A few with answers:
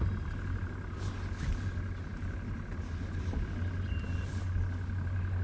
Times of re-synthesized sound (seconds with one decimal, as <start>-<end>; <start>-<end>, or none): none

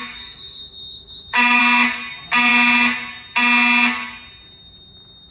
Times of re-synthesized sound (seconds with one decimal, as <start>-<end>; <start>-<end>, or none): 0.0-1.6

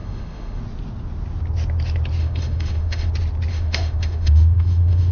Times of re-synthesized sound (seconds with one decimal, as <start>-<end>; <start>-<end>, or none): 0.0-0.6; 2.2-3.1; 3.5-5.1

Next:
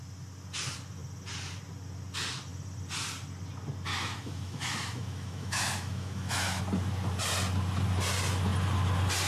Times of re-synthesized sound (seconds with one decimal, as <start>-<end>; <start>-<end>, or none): 3.9-6.6

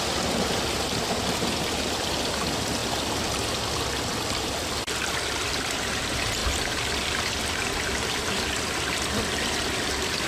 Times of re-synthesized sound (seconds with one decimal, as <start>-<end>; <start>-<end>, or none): none

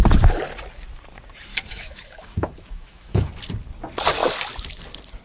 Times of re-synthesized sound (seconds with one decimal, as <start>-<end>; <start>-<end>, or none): 1.5-3.3